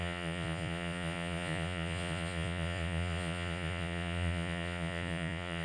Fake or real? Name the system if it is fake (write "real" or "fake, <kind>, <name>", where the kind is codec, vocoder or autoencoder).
fake, vocoder, Vocos